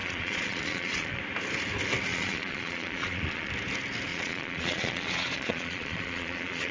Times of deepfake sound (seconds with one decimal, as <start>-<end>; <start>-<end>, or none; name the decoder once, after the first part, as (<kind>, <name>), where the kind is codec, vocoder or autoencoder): 0.0-1.2 (vocoder, Vocos); 2.1-3.5; 4.1-6.7